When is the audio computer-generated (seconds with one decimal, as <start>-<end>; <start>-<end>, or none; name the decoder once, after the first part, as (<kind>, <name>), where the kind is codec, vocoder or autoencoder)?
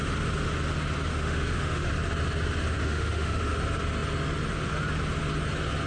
1.1-1.9 (autoencoder, DAC-VAE); 2.8-3.4